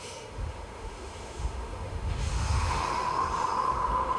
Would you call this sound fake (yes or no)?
yes